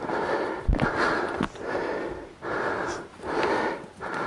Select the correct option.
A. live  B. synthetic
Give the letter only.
A